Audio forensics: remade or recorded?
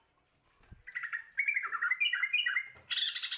recorded